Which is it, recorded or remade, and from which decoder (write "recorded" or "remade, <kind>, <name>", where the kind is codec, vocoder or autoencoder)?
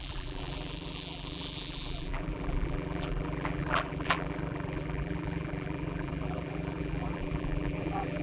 remade, vocoder, BigVGAN v2